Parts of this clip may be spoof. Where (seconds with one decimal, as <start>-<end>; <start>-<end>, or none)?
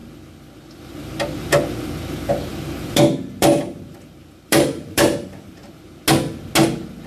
2.3-5.6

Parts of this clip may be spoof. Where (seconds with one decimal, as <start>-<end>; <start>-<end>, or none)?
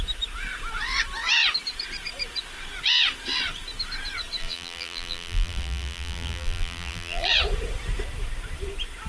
4.4-7.3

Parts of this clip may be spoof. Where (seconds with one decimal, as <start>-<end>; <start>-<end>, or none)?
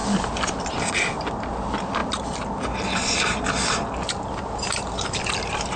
none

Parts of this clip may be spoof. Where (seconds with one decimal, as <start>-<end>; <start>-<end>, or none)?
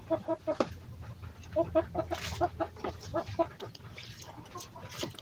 0.0-1.2; 2.6-5.2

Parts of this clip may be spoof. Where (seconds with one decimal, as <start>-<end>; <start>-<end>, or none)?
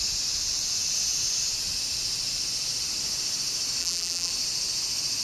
3.8-4.3